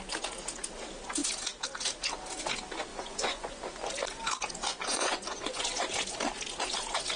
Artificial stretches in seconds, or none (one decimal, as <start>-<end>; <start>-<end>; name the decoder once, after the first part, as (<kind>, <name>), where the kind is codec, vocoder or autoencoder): 2.9-3.9 (vocoder, Vocos); 4.7-5.8

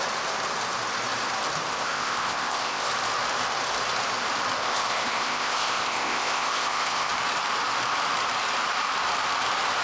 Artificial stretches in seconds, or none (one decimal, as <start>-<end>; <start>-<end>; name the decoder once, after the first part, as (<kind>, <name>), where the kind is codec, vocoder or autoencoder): 1.7-2.9 (codec, ZipCodec); 4.6-7.1

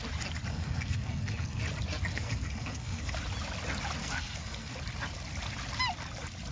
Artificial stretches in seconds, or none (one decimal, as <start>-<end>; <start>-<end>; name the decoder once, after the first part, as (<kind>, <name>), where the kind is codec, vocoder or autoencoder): 0.5-1.6 (codec, SNAC); 2.1-3.1; 4.0-4.7

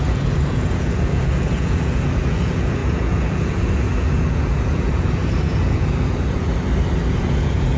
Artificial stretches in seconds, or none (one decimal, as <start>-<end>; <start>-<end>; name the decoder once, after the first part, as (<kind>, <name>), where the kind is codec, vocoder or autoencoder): 0.0-6.5 (vocoder, Vocos); 7.1-7.8

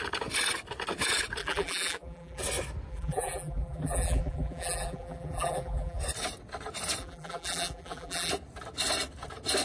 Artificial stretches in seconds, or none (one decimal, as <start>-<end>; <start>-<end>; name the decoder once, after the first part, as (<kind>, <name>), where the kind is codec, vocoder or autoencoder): 1.4-2.4 (vocoder, BigVGAN v2); 2.9-6.0; 7.0-8.3